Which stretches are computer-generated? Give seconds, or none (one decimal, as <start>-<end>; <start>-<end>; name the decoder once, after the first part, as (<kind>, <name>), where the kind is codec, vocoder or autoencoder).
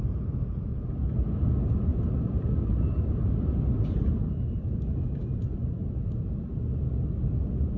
0.7-1.3 (vocoder, BigVGAN v2); 1.9-6.6